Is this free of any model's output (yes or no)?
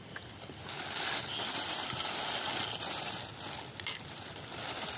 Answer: yes